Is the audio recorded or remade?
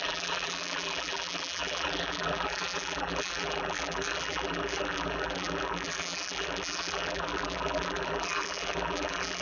remade